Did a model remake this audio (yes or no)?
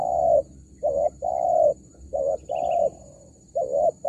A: no